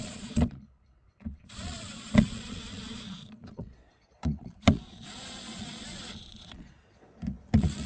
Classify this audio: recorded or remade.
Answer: remade